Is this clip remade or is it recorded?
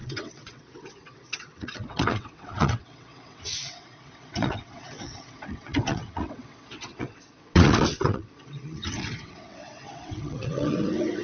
remade